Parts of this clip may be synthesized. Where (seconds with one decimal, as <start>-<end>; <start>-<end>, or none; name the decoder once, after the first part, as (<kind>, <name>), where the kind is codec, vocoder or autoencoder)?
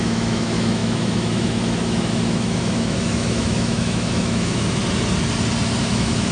0.0-4.8 (autoencoder, DAC-VAE); 5.8-6.3